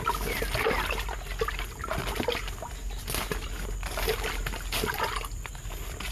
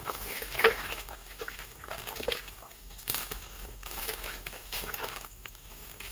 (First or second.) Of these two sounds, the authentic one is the first